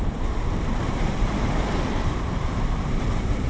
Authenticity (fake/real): fake